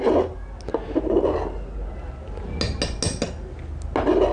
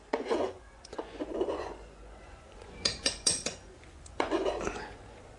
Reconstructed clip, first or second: second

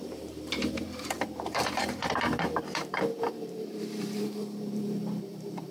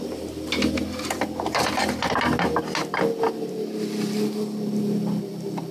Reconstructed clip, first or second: first